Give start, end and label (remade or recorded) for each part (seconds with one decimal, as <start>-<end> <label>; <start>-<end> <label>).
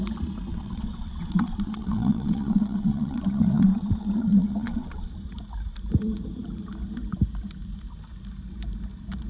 0.0-0.5 recorded; 0.5-5.1 remade; 5.1-9.3 recorded